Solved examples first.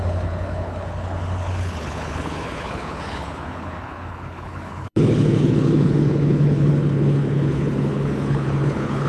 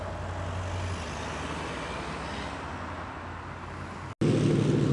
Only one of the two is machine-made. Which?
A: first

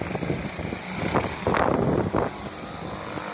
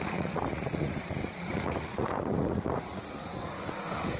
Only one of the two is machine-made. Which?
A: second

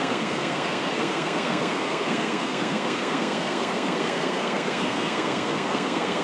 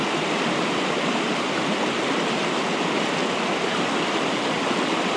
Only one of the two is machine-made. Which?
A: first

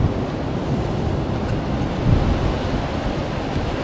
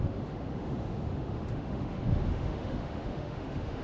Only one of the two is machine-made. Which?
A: second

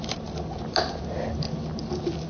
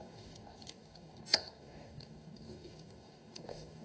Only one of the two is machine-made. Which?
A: second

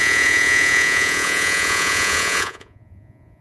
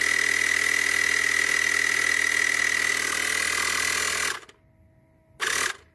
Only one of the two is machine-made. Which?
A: first